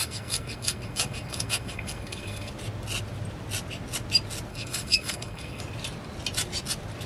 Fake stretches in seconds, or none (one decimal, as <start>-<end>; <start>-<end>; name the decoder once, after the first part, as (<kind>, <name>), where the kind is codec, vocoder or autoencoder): 0.0-2.5 (codec, SNAC); 4.5-5.6